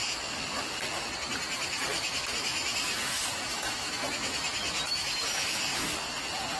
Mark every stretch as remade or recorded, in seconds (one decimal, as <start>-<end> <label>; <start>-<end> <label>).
0.0-1.9 recorded; 1.9-5.9 remade; 5.9-6.6 recorded